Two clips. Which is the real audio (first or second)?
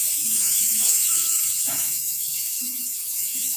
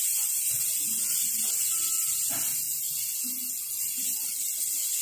second